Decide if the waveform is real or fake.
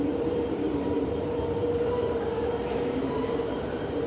fake